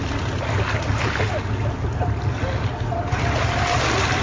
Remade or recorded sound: recorded